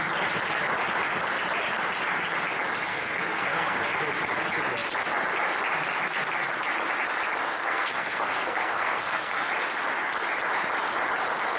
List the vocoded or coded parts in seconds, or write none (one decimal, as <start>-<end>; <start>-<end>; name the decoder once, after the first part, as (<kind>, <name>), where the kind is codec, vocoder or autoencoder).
2.9-3.8 (codec, SNAC); 7.6-9.5